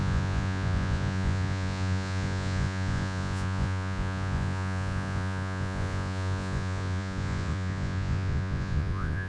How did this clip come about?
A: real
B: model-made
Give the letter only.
B